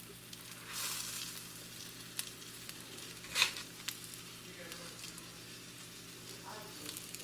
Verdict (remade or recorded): recorded